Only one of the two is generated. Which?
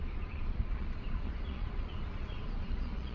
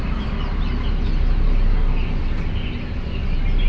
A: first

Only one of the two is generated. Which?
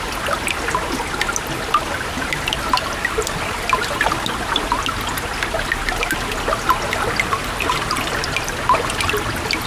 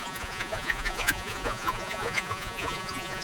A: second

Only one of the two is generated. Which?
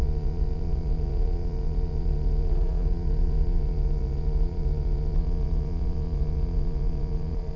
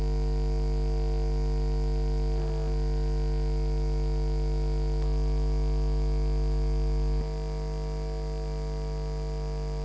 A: first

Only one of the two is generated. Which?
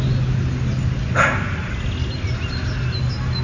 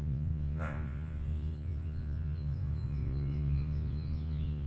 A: second